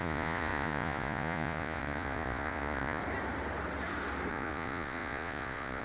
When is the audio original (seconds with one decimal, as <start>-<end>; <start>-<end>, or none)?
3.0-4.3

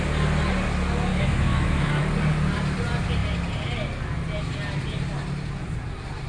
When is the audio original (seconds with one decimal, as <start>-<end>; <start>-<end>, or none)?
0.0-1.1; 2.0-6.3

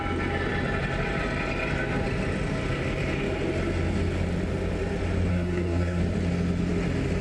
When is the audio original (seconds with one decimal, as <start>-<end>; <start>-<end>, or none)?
0.0-5.3; 6.0-7.2

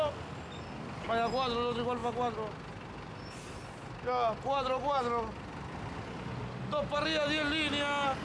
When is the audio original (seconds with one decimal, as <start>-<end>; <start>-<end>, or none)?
0.0-8.2

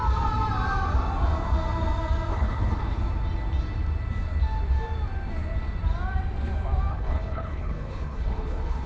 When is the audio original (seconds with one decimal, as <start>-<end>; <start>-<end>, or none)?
0.0-2.3; 3.0-6.9

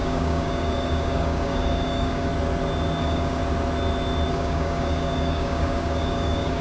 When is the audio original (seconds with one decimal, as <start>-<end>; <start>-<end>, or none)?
2.3-3.0; 3.4-4.3

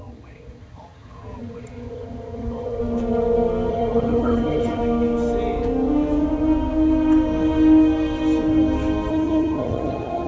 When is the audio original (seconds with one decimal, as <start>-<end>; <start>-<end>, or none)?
2.8-3.7; 4.8-9.1

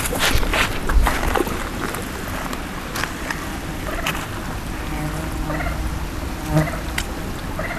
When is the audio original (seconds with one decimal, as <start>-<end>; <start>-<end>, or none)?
0.0-0.5; 1.4-7.8